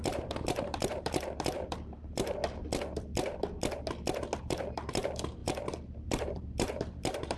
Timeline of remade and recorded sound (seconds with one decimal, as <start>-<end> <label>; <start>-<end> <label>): 0.0-2.4 remade; 2.4-4.4 recorded; 4.4-7.4 remade